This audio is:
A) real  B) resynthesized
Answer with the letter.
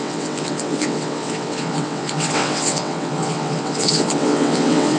B